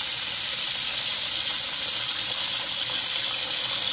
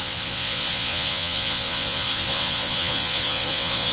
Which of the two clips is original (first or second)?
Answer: first